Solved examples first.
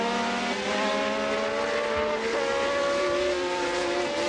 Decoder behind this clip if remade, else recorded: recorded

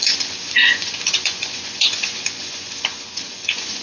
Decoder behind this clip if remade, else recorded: remade, vocoder, Vocos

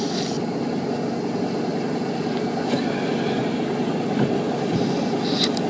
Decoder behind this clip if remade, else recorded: recorded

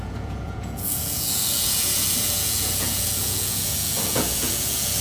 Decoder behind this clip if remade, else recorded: remade, vocoder, Vocos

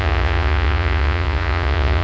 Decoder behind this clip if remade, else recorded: remade, vocoder, Vocos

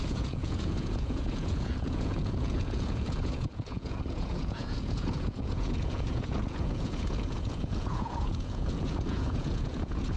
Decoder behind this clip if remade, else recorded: remade, vocoder, Vocos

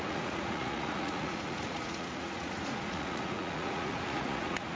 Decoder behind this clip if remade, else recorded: remade, vocoder, Vocos